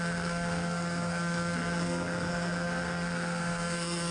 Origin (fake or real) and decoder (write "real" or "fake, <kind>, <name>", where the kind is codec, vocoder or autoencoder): fake, codec, SNAC